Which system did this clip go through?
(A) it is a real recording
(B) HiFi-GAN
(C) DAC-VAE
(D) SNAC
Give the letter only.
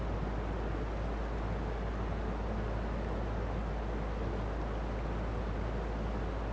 A